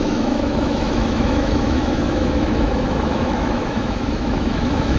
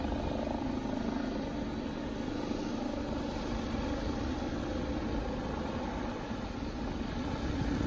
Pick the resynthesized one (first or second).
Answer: first